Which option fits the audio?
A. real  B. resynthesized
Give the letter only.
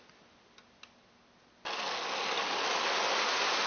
A